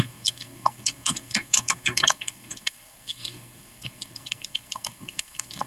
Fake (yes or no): yes